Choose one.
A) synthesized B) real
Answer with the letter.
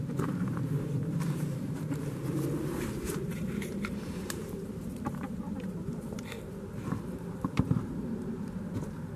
A